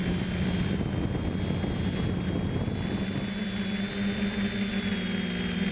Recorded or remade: recorded